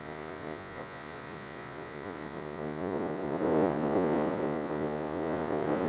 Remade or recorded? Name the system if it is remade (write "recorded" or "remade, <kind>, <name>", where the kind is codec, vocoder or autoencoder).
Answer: remade, vocoder, Vocos